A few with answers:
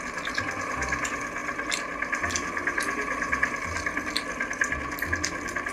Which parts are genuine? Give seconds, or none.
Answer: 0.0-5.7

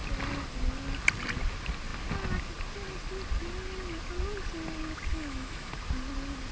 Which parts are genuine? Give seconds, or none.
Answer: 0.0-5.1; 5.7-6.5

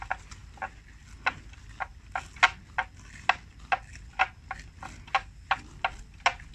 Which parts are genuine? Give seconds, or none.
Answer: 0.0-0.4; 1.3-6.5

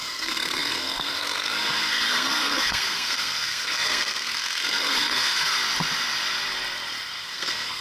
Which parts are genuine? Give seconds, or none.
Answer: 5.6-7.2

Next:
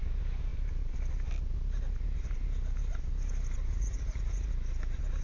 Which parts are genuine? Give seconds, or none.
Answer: 0.0-3.7; 4.5-5.2